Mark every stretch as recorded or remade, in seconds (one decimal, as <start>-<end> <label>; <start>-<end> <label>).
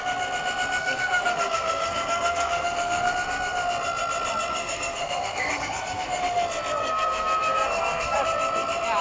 0.0-0.8 recorded; 0.8-3.1 remade; 3.1-4.5 recorded; 4.5-6.2 remade; 6.2-6.8 recorded; 6.8-8.2 remade; 8.2-9.0 recorded